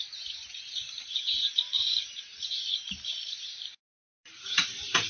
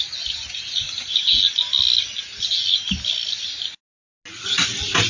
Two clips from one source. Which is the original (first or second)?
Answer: second